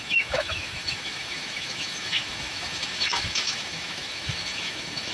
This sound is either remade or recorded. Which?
remade